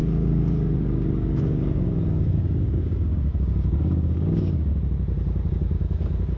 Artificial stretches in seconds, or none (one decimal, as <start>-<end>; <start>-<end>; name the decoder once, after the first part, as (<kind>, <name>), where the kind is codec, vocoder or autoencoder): 0.0-4.7 (codec, DAC); 5.5-6.4